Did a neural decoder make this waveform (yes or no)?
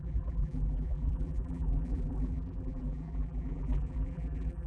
yes